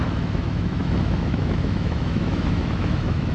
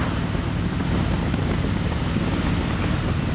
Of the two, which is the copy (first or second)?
first